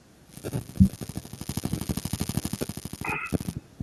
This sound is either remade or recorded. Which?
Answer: recorded